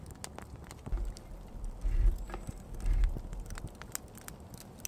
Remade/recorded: recorded